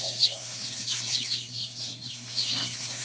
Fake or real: fake